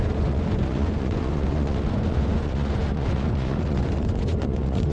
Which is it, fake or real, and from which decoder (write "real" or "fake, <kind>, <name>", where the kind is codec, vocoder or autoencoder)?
fake, vocoder, Vocos